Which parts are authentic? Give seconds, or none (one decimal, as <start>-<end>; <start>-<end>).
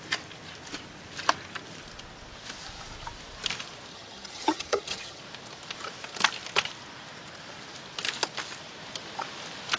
0.0-3.9; 5.2-9.8